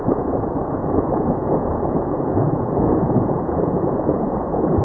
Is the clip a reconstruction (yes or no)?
yes